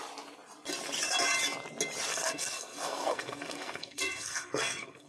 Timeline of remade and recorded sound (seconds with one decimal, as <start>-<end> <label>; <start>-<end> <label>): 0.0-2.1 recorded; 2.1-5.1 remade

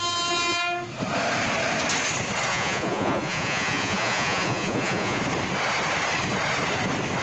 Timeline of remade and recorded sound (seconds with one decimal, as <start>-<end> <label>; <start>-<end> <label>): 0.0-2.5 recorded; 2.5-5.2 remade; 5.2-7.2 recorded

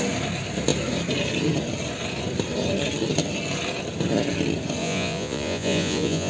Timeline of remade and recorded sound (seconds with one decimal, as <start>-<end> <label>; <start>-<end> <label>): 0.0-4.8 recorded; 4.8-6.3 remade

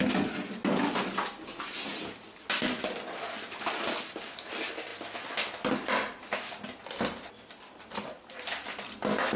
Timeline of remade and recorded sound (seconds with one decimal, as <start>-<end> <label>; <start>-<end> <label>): 0.0-9.4 recorded

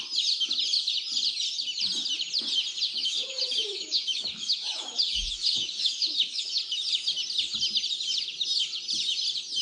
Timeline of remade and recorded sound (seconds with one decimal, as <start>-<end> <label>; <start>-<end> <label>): 0.0-3.0 recorded; 3.0-6.6 remade; 6.6-9.6 recorded

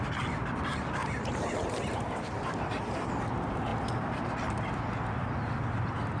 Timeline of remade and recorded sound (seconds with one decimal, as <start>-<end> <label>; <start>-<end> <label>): 0.0-1.0 recorded; 1.0-3.0 remade; 3.0-6.2 recorded